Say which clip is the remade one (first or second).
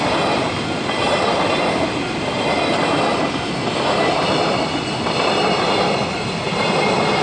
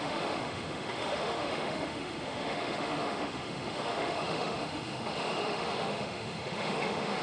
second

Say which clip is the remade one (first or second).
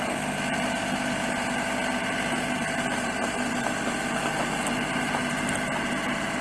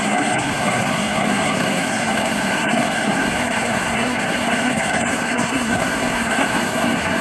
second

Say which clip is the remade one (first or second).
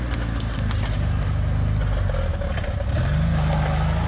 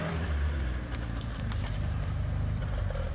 second